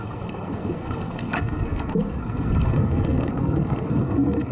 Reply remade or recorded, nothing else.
remade